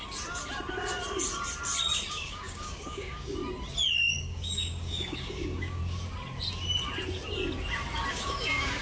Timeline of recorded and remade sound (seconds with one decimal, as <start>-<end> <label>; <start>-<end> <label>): 0.0-2.1 recorded; 2.1-3.4 remade; 3.4-4.2 recorded; 4.2-5.8 remade; 5.8-8.1 recorded; 8.1-8.8 remade